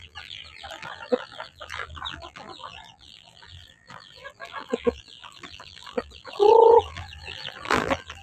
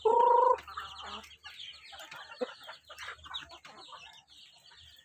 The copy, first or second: first